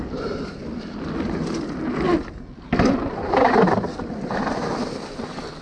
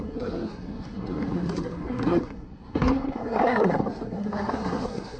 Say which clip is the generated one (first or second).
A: second